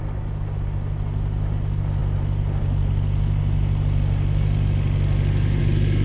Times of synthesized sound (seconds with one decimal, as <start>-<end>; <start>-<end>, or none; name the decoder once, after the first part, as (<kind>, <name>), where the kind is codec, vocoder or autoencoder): none